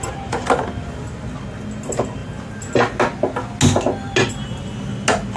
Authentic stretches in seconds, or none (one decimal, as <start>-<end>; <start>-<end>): 0.0-5.4